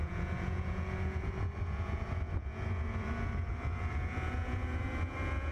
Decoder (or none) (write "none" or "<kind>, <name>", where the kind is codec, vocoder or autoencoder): vocoder, Vocos